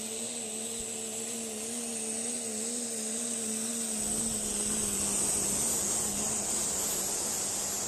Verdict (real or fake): real